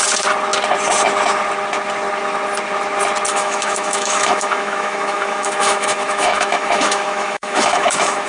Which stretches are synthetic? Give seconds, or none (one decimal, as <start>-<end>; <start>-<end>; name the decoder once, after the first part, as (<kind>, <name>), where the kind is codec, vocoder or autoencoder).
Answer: 3.3-8.3 (autoencoder, DAC-VAE)